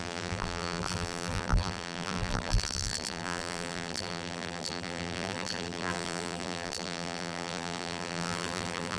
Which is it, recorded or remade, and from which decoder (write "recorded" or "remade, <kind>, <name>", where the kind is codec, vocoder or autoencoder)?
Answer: remade, vocoder, BigVGAN v2